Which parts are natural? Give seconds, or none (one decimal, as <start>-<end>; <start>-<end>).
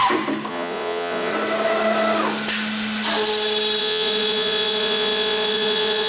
0.0-0.5; 1.3-3.8